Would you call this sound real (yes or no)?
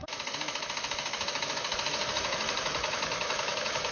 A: no